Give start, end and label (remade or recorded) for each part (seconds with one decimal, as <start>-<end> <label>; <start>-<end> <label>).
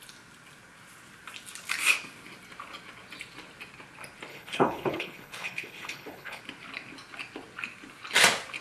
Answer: 0.0-4.3 recorded; 4.3-6.4 remade; 6.4-8.6 recorded